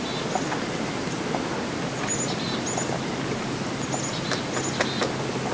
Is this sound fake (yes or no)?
no